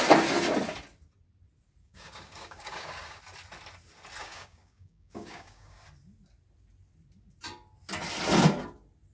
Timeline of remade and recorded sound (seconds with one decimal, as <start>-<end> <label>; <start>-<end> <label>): 0.0-1.8 recorded; 1.8-3.2 remade; 3.2-4.2 recorded; 4.2-5.8 remade; 5.8-9.1 recorded

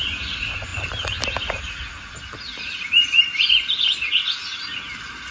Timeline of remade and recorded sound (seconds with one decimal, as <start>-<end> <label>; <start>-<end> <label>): 0.0-5.3 recorded